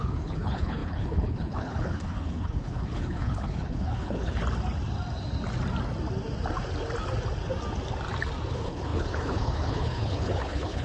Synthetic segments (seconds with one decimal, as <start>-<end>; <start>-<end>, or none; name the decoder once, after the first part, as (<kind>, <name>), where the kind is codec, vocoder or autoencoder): 0.0-4.4 (codec, HILCodec); 8.5-10.8